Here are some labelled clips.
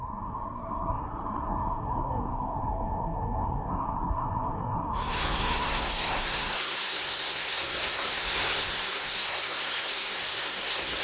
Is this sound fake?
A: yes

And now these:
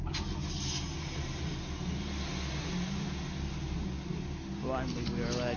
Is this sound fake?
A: no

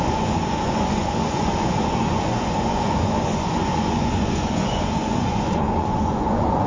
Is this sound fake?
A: yes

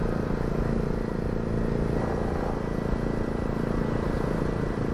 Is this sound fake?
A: no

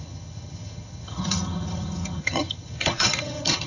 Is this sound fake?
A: yes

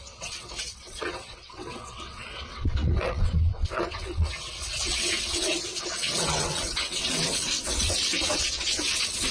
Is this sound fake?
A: yes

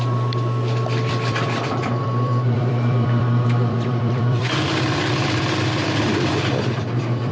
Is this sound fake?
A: yes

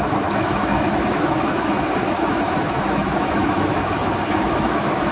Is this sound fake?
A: yes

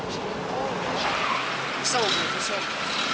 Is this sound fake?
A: no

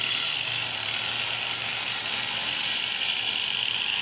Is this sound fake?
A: no